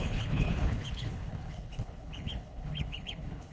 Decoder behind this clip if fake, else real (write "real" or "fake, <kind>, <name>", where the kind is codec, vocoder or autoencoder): fake, codec, HILCodec